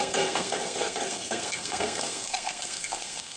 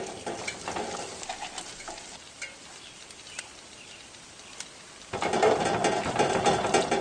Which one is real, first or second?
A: second